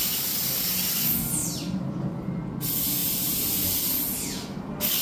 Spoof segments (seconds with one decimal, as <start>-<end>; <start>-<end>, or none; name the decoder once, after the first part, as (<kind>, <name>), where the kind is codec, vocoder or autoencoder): 1.4-1.9 (vocoder, BigVGAN v2); 3.0-3.6